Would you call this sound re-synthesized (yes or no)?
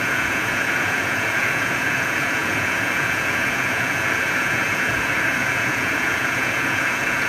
yes